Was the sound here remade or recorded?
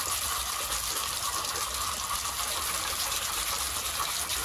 recorded